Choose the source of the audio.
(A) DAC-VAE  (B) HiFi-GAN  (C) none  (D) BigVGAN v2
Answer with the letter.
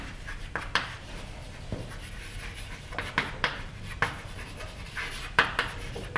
D